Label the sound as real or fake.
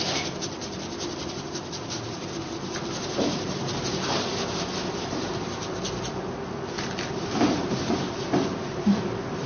fake